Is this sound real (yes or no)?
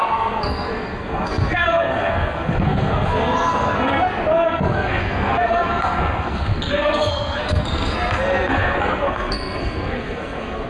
no